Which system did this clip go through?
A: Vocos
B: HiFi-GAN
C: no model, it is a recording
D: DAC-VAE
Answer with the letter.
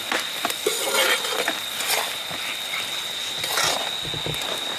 C